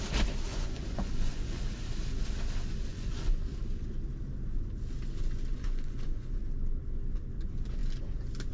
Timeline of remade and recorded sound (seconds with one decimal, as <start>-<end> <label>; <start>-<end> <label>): 0.0-0.5 recorded; 0.5-1.6 remade; 1.6-2.9 recorded; 2.9-3.5 remade; 3.5-5.5 recorded; 5.5-6.4 remade; 6.4-8.5 recorded